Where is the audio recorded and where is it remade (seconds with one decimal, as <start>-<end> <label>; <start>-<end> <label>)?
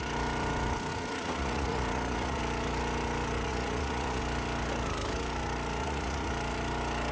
0.0-0.9 recorded; 0.9-2.4 remade; 2.4-3.5 recorded; 3.5-4.2 remade; 4.2-5.8 recorded; 5.8-6.3 remade; 6.3-7.1 recorded